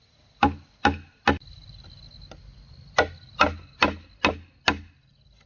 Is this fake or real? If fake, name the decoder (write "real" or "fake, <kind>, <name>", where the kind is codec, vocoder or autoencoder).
real